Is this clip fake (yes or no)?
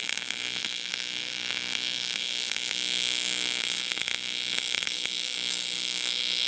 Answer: yes